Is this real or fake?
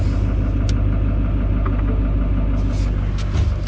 real